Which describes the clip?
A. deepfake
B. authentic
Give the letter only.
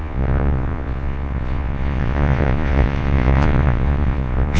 A